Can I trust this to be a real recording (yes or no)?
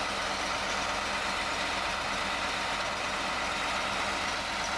yes